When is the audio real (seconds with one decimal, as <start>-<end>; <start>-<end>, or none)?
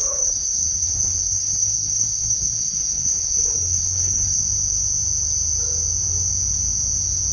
4.4-7.3